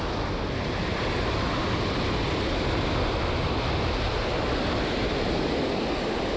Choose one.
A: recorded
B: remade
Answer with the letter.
A